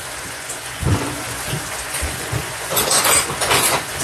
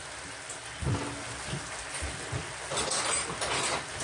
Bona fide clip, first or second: second